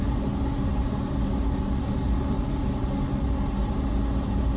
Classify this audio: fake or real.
real